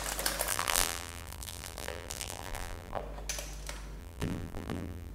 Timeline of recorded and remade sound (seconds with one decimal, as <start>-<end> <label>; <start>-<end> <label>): 0.0-0.5 recorded; 0.5-3.0 remade; 3.0-4.0 recorded; 4.0-5.1 remade